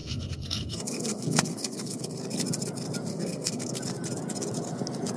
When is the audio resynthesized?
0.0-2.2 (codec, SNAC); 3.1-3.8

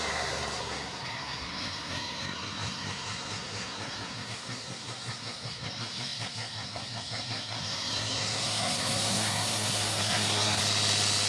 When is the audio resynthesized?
0.0-10.6 (codec, SNAC)

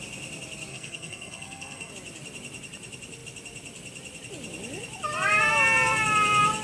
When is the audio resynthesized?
0.7-1.9 (codec, SNAC)

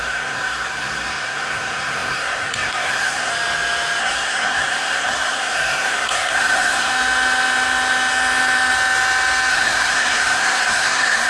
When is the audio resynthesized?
0.0-3.3 (codec, SNAC); 4.0-6.9; 9.5-11.3